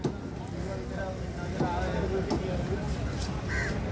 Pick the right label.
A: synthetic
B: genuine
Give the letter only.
B